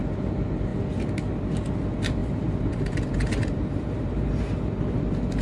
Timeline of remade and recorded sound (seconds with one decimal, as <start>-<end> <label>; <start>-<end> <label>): 0.0-2.2 recorded; 2.2-5.0 remade; 5.0-5.4 recorded